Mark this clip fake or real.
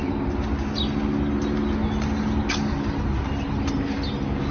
real